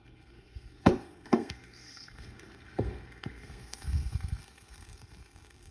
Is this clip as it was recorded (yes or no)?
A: no